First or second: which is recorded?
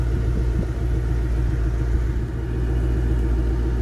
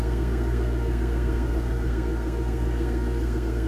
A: first